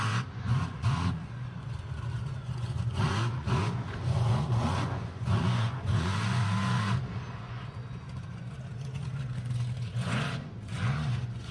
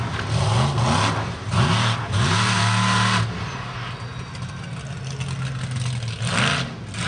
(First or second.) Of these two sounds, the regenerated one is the first